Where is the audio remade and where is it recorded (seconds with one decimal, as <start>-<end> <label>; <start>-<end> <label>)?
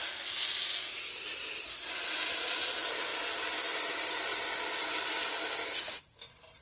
0.0-3.1 recorded; 3.1-3.9 remade; 3.9-6.6 recorded